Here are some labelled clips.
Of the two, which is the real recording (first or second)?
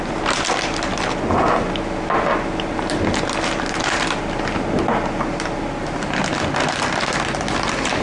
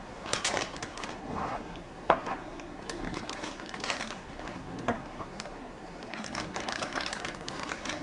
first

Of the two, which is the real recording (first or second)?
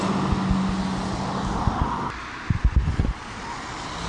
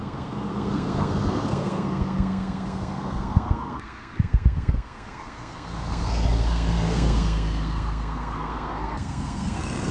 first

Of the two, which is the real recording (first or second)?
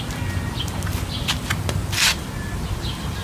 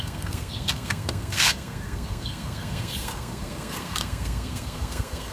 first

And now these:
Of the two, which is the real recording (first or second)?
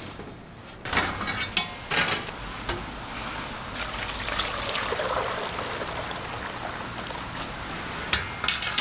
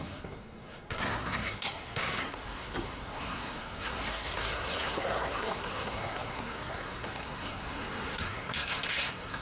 first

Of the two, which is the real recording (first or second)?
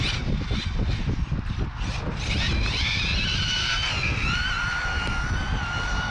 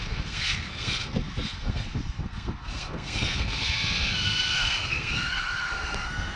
first